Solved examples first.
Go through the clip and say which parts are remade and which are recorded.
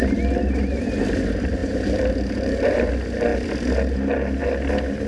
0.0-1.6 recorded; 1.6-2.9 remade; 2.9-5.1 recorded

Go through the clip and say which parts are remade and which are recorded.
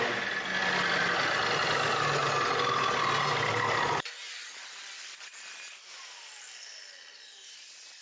0.0-8.0 recorded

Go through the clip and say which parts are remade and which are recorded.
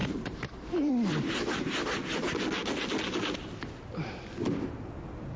0.0-0.9 remade; 0.9-5.4 recorded